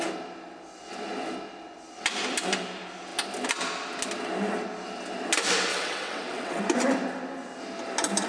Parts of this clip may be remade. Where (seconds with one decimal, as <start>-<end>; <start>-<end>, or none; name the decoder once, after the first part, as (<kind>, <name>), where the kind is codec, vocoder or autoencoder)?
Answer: 5.7-6.6 (vocoder, WaveNeXt)